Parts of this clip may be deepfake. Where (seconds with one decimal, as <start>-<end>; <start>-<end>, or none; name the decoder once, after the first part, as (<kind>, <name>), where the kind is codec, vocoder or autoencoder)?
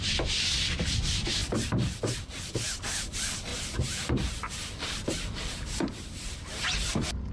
1.4-2.5 (vocoder, BigVGAN v2); 3.5-6.6